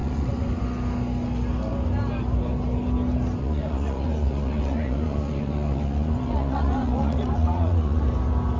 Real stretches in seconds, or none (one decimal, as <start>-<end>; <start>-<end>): 0.6-3.4; 8.0-8.6

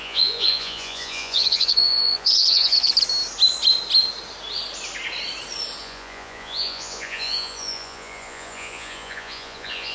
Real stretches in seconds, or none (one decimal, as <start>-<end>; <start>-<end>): 2.9-5.8

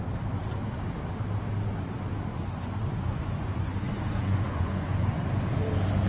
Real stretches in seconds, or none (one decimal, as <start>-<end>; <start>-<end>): 0.0-2.3; 5.2-6.1

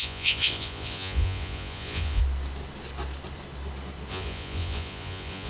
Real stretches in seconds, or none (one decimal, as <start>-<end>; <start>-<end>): 2.2-4.1

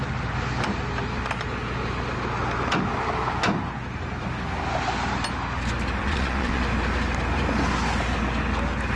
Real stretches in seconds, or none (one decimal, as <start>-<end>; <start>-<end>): 0.0-6.0; 6.6-9.0